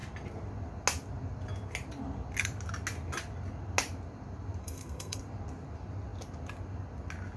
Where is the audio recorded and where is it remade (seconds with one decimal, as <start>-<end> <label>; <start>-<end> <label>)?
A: 0.0-4.6 recorded; 4.6-5.2 remade; 5.2-7.4 recorded